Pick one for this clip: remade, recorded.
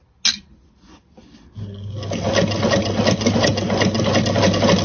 recorded